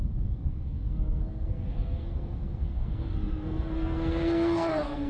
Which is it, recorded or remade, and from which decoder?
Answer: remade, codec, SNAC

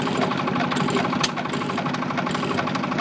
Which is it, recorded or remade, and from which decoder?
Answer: recorded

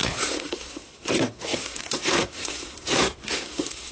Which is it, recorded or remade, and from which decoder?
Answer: remade, codec, SNAC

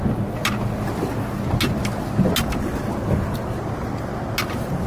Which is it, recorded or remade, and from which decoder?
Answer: recorded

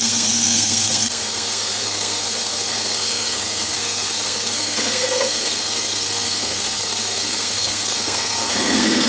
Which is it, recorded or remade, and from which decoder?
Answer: remade, codec, SNAC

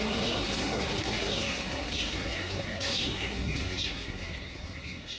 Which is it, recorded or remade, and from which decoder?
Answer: remade, codec, SNAC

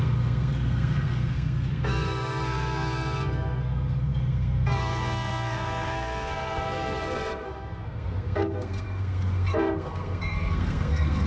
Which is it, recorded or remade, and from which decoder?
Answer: remade, codec, SNAC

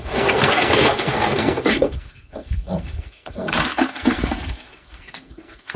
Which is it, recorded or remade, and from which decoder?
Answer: remade, codec, SNAC